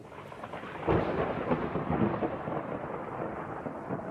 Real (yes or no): yes